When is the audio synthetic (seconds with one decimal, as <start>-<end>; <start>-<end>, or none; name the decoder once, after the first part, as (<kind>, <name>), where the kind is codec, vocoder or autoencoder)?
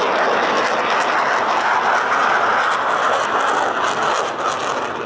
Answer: none